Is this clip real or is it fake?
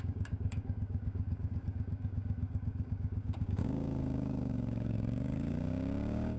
fake